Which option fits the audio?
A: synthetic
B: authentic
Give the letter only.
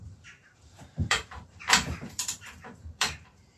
A